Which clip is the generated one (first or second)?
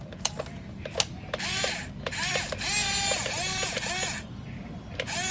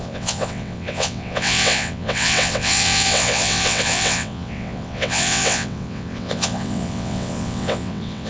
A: second